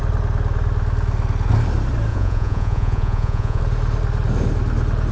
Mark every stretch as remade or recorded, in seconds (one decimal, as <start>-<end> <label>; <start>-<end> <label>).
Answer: 0.0-2.1 recorded; 2.1-3.6 remade; 3.6-5.1 recorded

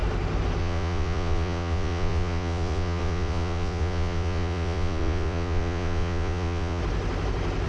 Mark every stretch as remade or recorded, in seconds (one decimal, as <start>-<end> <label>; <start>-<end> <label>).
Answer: 0.0-0.6 recorded; 0.6-6.8 remade; 6.8-7.7 recorded

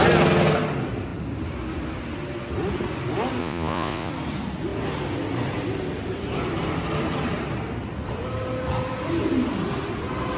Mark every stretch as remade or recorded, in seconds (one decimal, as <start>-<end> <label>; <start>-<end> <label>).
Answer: 0.0-3.4 recorded; 3.4-4.1 remade; 4.1-10.4 recorded